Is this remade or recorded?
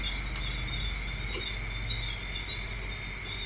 recorded